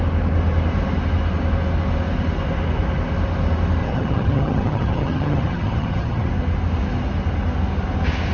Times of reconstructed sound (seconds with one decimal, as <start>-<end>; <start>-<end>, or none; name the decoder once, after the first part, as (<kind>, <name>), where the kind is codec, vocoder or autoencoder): 3.8-6.3 (vocoder, HiFi-GAN)